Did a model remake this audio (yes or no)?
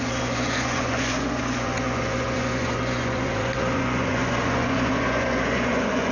yes